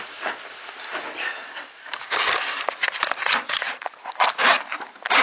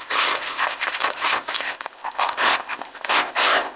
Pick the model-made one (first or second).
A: second